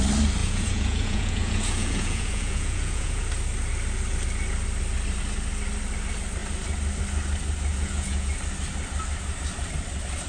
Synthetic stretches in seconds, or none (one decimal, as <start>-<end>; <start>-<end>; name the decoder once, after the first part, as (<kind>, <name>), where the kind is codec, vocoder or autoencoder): 0.4-3.2 (vocoder, Vocos); 7.7-8.3